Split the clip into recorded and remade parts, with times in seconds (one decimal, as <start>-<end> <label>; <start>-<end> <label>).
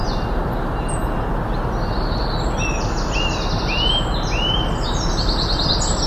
0.0-6.1 recorded